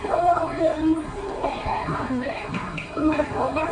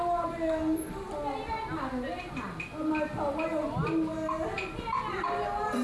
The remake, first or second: first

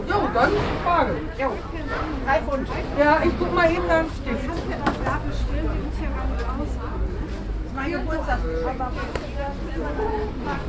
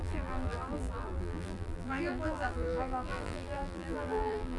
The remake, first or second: second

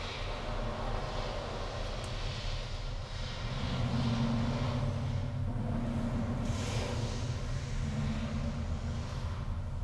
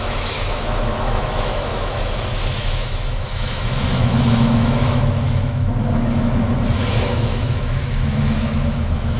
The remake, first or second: second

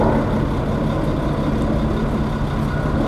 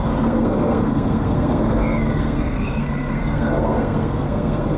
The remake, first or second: second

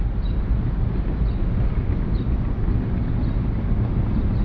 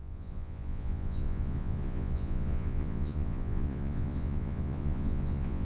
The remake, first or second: second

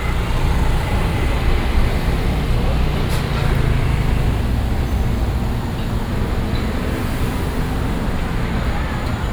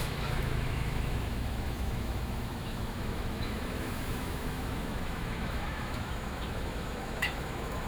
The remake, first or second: second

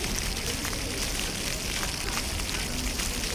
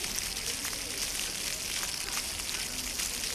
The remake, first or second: first